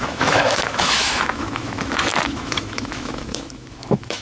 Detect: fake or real fake